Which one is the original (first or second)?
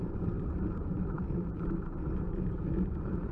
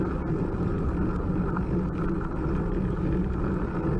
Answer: second